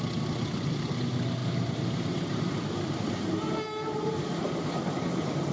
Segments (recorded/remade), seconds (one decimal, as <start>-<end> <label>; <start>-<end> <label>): 0.0-1.4 remade; 1.4-3.0 recorded; 3.0-5.5 remade